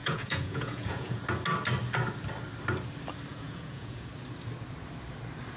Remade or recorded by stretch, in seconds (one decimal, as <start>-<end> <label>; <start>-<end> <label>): 0.0-1.2 remade; 1.2-3.3 recorded; 3.3-4.1 remade; 4.1-5.6 recorded